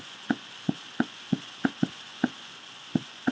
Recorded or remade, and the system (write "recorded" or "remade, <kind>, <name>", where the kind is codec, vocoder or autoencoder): remade, vocoder, Vocos